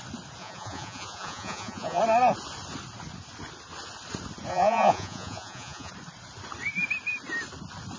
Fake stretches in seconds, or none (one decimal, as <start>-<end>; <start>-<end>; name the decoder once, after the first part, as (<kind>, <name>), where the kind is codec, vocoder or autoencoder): 0.4-2.0 (vocoder, Vocos); 4.5-5.9